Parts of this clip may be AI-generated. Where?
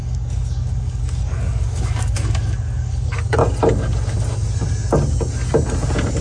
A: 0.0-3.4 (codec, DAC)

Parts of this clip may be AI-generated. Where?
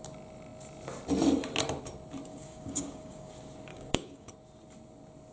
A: 2.3-3.3 (codec, DAC); 3.7-4.3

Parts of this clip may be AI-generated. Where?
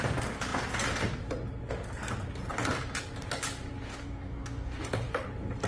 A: 3.9-4.8 (codec, DAC)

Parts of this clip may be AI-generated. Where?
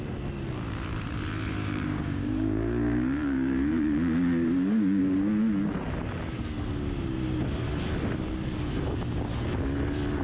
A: 1.6-5.0 (codec, DAC)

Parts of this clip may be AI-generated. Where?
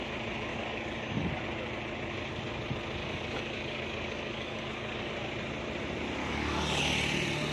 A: 0.5-1.3 (codec, DAC); 3.0-5.1; 6.2-6.8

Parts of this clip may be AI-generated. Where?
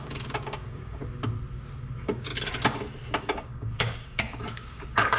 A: 0.0-1.0 (codec, DAC); 1.8-2.3; 3.2-5.2